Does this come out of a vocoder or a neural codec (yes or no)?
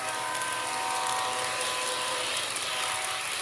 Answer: no